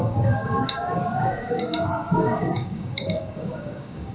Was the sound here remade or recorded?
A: remade